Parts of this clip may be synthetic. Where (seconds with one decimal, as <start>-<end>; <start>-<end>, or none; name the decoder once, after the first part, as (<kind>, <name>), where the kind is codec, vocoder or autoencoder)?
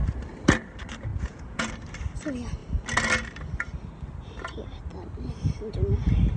1.1-1.7 (vocoder, Vocos)